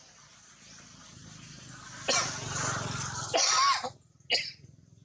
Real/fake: real